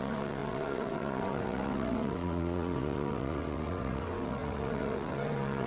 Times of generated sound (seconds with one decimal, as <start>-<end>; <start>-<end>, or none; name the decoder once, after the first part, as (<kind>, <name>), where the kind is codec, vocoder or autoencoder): 0.0-5.7 (vocoder, WaveNeXt)